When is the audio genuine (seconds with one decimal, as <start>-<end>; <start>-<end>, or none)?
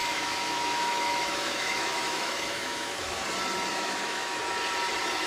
3.2-3.7; 4.4-5.3